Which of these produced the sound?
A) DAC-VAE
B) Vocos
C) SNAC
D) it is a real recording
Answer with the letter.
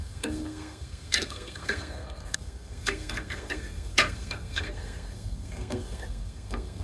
C